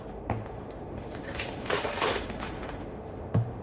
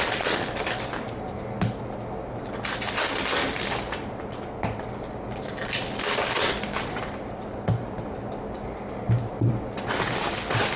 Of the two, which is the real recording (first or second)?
second